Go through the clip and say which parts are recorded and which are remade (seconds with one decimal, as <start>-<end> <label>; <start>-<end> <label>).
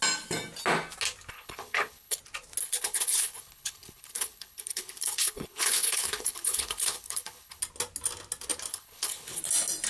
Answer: 0.0-1.3 recorded; 1.3-2.2 remade; 2.2-2.6 recorded; 2.6-7.6 remade; 7.6-8.7 recorded; 8.7-9.4 remade; 9.4-9.9 recorded